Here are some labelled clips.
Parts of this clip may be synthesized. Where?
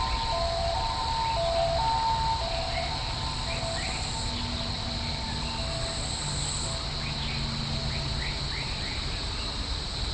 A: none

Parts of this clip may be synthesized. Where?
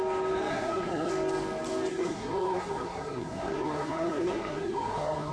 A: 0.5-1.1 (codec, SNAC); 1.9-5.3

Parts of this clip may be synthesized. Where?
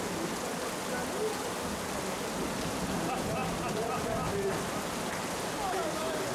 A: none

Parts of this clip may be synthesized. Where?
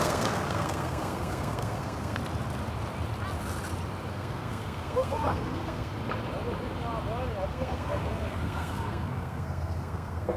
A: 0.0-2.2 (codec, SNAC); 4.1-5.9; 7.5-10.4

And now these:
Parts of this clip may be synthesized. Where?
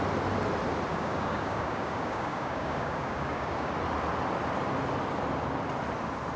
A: 0.9-3.7 (codec, DAC)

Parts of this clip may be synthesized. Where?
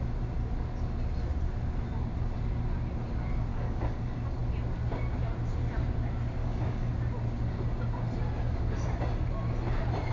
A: 3.5-4.0 (codec, DAC); 6.4-6.9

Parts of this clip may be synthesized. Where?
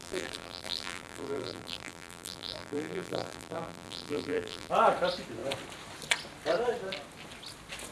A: 0.0-4.7 (vocoder, BigVGAN v2)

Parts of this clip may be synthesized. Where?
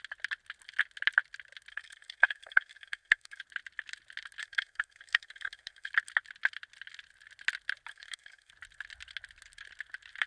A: 1.7-3.4 (codec, SNAC); 4.4-5.9; 7.9-8.5